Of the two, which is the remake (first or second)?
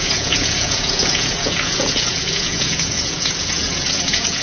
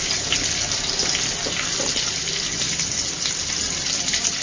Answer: first